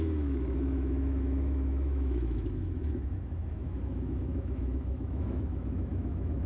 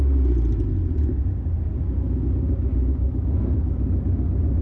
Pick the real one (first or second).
second